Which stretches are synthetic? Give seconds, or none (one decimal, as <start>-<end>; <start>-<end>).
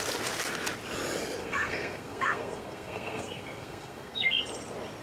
1.4-4.4